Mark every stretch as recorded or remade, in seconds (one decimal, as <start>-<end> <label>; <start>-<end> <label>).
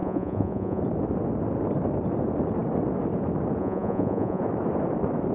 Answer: 0.0-0.8 remade; 0.8-3.6 recorded; 3.6-4.4 remade; 4.4-5.3 recorded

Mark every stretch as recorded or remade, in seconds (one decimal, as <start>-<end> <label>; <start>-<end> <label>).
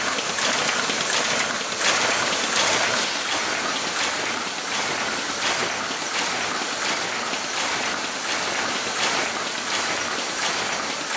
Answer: 0.0-11.2 recorded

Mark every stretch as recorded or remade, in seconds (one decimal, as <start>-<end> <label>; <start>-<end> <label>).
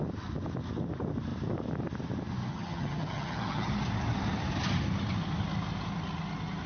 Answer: 0.0-2.5 recorded; 2.5-3.7 remade; 3.7-6.7 recorded